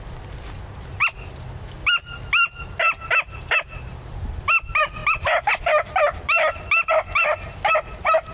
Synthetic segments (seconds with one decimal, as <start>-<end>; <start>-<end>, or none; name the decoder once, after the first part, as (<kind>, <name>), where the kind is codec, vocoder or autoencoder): none